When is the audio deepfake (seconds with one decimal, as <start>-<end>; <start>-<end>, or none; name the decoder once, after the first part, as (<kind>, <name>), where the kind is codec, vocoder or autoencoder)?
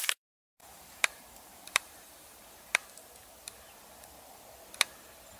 0.0-2.8 (vocoder, BigVGAN v2)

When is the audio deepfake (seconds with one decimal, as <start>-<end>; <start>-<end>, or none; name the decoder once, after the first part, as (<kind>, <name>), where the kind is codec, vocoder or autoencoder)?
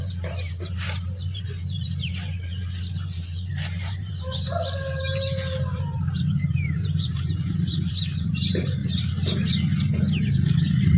0.0-8.8 (vocoder, BigVGAN v2); 10.6-11.0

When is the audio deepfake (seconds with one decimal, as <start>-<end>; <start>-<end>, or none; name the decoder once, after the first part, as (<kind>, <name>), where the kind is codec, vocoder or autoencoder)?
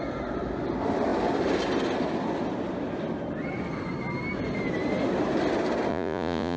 5.9-6.6 (vocoder, Vocos)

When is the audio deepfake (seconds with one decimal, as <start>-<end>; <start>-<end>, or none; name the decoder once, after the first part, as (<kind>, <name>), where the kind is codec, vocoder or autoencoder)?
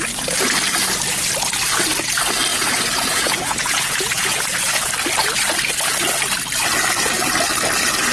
2.5-4.9 (vocoder, Vocos)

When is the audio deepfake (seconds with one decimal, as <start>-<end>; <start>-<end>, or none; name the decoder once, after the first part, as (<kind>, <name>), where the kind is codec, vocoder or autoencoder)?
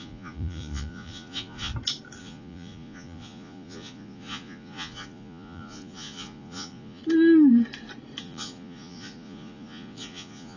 0.0-1.7 (vocoder, Vocos); 2.2-7.0; 8.2-10.6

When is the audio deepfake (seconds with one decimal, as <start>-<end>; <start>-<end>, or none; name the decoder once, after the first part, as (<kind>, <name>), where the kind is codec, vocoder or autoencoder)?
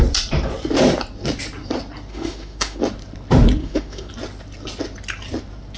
2.1-2.8 (autoencoder, DAC-VAE); 3.6-4.1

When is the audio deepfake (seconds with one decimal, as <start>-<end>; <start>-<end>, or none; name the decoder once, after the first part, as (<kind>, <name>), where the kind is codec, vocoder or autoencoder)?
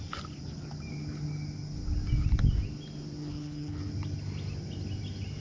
3.2-3.9 (codec, HILCodec)